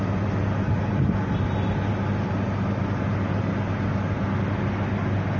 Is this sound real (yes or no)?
yes